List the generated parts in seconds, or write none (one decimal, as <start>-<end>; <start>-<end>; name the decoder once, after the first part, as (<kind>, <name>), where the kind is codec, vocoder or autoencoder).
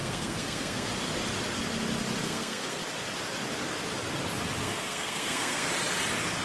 0.0-0.9 (codec, SNAC); 2.2-2.8; 4.6-5.7